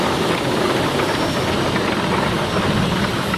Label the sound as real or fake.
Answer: real